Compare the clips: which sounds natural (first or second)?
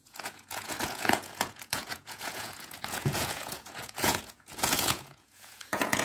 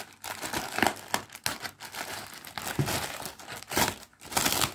second